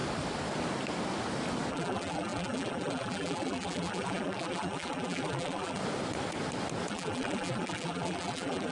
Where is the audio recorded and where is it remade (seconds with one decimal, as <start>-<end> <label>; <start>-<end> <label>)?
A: 0.0-1.7 recorded; 1.7-5.8 remade; 5.8-6.9 recorded; 6.9-8.7 remade

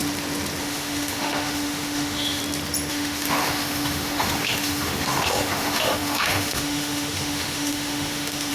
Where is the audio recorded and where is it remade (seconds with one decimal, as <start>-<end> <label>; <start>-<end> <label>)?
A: 0.0-0.6 recorded; 0.6-2.4 remade; 2.4-2.9 recorded; 2.9-8.5 remade

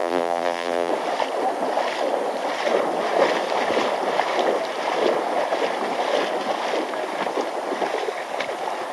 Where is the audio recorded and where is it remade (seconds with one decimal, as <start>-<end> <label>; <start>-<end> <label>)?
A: 0.0-0.9 remade; 0.9-8.9 recorded